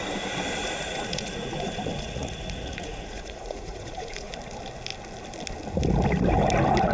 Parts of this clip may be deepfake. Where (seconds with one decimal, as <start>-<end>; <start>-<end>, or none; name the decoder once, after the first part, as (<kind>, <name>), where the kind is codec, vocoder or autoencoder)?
0.6-4.3 (vocoder, Vocos)

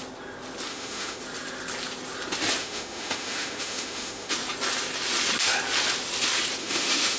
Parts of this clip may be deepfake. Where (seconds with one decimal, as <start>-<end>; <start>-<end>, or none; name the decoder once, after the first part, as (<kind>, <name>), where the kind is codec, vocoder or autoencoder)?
0.7-1.2 (autoencoder, DAC-VAE); 2.6-4.3; 6.6-7.2

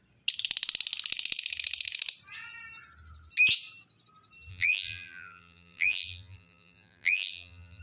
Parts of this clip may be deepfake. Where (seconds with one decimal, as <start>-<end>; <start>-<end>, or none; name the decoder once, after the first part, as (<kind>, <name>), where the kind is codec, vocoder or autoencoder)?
4.5-7.8 (vocoder, BigVGAN v2)

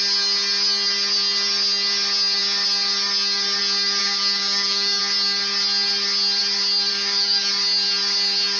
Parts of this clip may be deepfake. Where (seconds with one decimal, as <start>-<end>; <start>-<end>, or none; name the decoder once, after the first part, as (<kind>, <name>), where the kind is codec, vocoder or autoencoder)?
4.0-5.0 (codec, DAC); 6.9-7.5

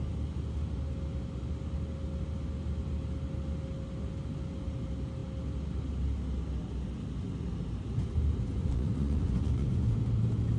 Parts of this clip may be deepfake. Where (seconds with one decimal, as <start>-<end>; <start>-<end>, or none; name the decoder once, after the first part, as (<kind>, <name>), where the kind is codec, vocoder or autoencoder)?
8.5-9.9 (vocoder, Vocos)

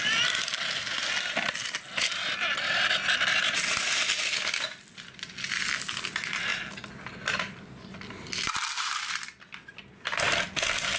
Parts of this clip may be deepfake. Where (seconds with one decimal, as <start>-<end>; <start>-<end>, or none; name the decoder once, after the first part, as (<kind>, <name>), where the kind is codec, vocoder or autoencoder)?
none

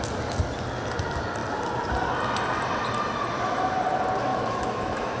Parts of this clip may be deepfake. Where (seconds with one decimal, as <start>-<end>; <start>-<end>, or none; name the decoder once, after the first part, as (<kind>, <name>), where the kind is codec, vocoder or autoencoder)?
4.3-5.2 (autoencoder, DAC-VAE)

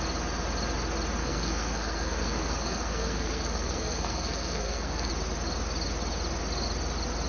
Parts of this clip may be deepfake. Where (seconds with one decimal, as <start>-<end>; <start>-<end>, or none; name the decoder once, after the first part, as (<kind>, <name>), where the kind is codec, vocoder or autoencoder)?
1.2-5.1 (codec, SNAC)